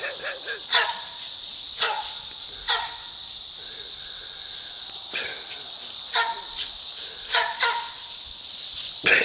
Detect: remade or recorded recorded